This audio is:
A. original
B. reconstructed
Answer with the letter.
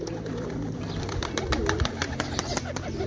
B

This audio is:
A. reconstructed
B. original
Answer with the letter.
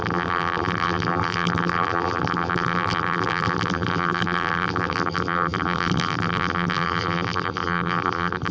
A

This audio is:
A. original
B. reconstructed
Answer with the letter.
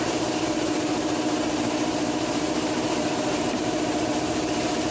B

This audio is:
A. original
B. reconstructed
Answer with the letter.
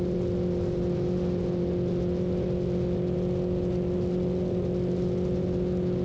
A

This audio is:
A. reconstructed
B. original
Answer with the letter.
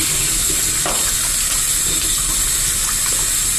B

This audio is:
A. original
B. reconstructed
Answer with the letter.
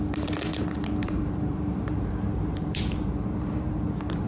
B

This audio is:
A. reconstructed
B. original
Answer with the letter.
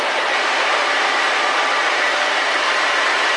A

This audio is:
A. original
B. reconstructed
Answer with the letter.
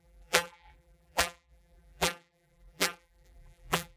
B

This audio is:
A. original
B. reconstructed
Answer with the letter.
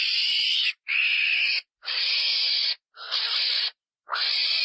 A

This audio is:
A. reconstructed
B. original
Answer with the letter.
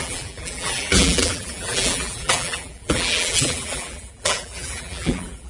A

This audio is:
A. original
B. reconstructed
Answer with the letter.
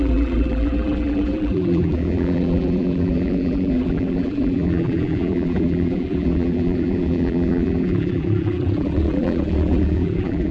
B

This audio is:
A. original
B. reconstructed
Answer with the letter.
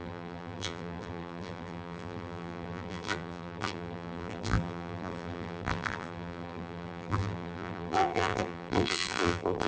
B